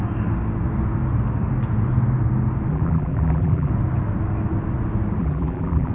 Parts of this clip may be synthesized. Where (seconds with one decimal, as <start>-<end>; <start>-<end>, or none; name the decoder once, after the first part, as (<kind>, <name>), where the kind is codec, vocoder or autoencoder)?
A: 2.7-3.7 (vocoder, BigVGAN v2); 5.2-5.9